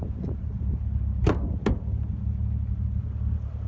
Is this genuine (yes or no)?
yes